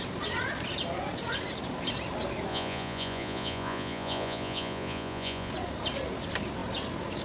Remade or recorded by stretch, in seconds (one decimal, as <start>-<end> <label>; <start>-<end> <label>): 0.0-2.5 recorded; 2.5-5.5 remade; 5.5-7.2 recorded